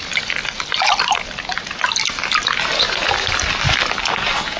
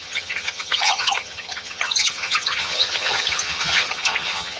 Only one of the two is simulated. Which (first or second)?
second